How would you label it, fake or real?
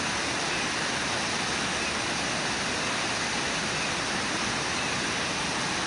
real